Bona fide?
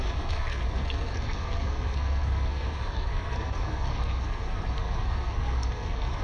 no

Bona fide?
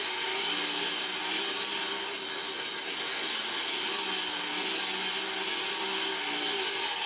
yes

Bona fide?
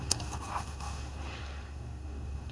no